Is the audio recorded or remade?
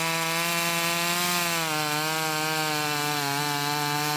recorded